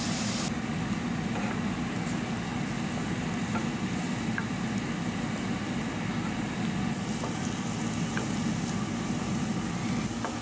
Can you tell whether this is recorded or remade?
recorded